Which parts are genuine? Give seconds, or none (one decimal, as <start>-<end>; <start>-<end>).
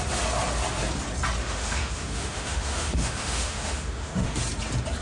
0.0-1.4; 4.4-5.0